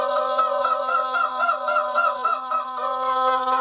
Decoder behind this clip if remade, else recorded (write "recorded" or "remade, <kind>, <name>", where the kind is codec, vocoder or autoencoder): remade, vocoder, WaveNeXt